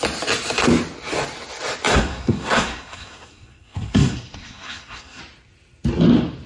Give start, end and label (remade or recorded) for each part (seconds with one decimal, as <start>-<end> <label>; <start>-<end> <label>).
0.0-1.9 recorded; 1.9-5.2 remade; 5.2-6.5 recorded